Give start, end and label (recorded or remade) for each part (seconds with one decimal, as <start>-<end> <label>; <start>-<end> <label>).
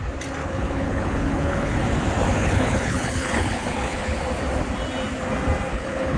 0.0-0.4 recorded; 0.4-1.8 remade; 1.8-2.4 recorded; 2.4-4.2 remade; 4.2-5.7 recorded; 5.7-6.2 remade